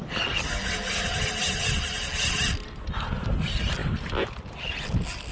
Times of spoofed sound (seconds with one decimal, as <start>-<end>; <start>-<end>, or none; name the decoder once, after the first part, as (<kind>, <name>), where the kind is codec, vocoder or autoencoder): none